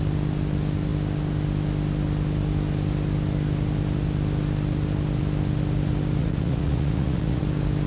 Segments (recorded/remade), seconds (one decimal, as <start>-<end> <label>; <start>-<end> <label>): 0.0-6.2 recorded; 6.2-7.4 remade; 7.4-7.9 recorded